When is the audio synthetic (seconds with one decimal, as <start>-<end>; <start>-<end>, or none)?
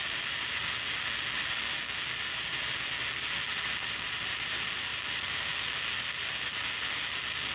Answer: none